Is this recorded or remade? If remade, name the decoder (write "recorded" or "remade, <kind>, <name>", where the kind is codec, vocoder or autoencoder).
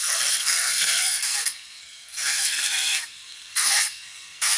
remade, codec, SNAC